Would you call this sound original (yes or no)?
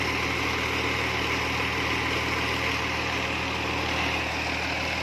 yes